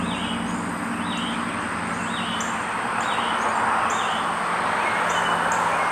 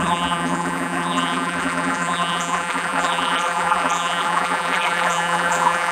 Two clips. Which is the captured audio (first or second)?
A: first